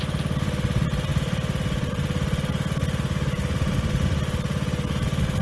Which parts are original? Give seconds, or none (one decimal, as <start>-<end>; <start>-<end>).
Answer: 0.0-5.4